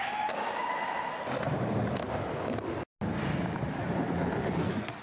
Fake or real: real